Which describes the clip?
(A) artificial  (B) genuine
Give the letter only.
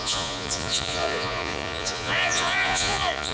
A